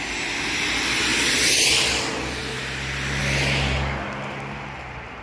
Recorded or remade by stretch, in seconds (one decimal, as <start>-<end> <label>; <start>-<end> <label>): 0.0-1.1 recorded; 1.1-1.6 remade; 1.6-5.2 recorded